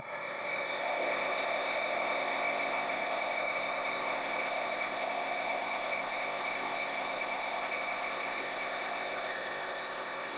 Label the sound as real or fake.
fake